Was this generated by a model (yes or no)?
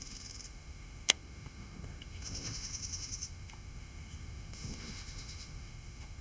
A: yes